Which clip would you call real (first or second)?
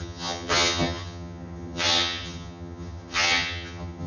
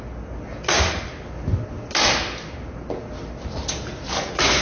second